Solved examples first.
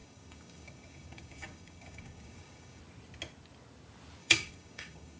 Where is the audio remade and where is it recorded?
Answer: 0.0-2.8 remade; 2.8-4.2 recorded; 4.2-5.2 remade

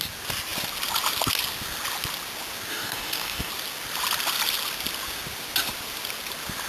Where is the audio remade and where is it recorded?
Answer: 0.0-2.7 recorded; 2.7-3.5 remade; 3.5-6.7 recorded

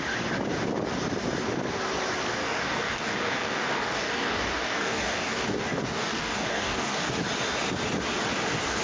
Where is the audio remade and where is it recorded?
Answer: 0.0-2.4 recorded; 2.4-7.1 remade; 7.1-8.8 recorded

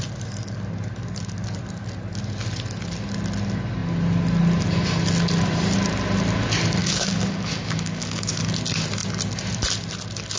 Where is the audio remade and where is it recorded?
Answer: 0.0-6.8 recorded; 6.8-8.4 remade; 8.4-10.4 recorded

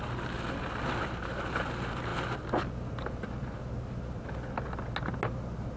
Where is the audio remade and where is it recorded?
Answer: 0.0-5.8 recorded

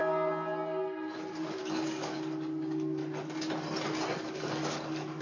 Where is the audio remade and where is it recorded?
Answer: 0.0-1.6 recorded; 1.6-3.0 remade; 3.0-4.2 recorded; 4.2-5.2 remade

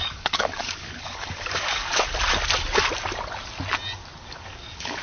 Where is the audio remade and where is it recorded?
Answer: 0.0-1.9 remade; 1.9-4.2 recorded; 4.2-5.0 remade

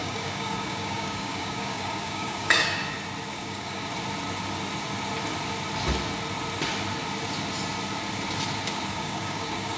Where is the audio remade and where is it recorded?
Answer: 0.0-2.8 remade; 2.8-3.3 recorded; 3.3-3.9 remade; 3.9-8.9 recorded; 8.9-9.8 remade